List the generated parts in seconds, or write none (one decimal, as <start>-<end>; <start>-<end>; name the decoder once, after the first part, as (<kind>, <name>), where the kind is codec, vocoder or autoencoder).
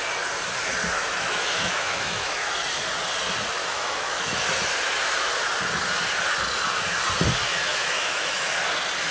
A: 1.0-2.5 (autoencoder, DAC-VAE); 3.6-4.4; 7.7-8.5